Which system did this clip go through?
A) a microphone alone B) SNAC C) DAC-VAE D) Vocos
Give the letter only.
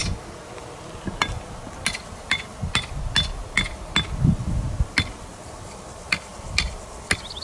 A